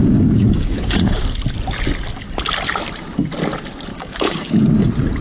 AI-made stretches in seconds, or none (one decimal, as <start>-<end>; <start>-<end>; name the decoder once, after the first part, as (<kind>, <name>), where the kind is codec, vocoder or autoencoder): 0.0-1.2 (codec, DAC); 3.9-4.5